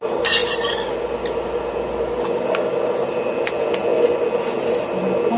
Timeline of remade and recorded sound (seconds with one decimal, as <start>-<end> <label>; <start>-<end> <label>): 0.0-5.4 recorded